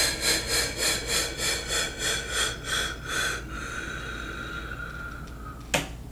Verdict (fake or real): real